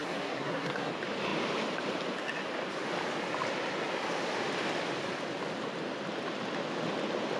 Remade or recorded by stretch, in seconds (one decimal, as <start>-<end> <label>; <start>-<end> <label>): 0.0-0.9 remade; 0.9-7.4 recorded